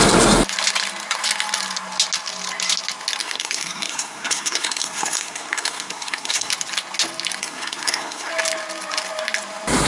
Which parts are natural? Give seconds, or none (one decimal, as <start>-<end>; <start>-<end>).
0.0-3.2; 6.5-7.4; 8.3-9.9

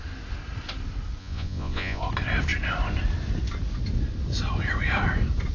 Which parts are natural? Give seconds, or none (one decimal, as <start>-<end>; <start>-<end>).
0.0-1.2; 2.0-5.5

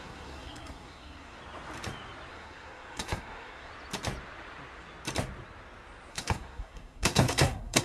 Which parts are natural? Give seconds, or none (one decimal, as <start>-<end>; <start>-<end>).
1.4-2.3; 3.7-6.1

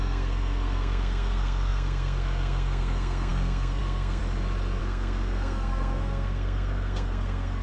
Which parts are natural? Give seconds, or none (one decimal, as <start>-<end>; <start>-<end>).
4.2-4.8

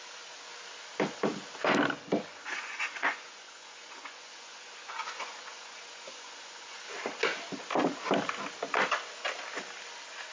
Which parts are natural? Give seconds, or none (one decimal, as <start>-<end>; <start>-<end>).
0.0-2.3; 6.8-10.3

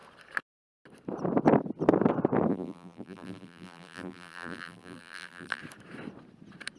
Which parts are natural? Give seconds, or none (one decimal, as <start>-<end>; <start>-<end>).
0.0-2.5; 5.6-6.8

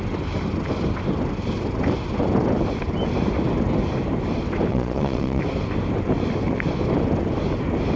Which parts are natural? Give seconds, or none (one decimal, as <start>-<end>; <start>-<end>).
0.0-4.7; 5.4-8.0

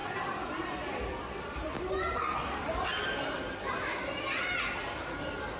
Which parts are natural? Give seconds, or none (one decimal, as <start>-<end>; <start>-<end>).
1.8-2.9; 4.0-5.6